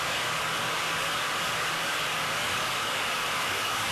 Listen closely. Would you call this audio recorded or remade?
remade